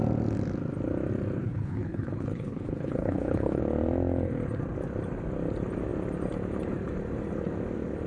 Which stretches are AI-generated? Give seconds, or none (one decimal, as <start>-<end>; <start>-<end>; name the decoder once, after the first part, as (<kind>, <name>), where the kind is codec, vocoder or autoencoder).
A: 1.4-3.6 (codec, HILCodec)